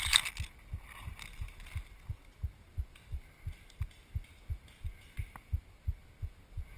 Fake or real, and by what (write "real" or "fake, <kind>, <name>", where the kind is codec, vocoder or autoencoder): real